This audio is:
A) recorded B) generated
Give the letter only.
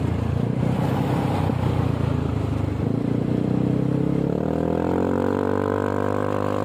A